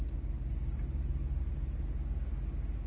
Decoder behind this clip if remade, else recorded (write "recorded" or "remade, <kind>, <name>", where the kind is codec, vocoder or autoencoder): recorded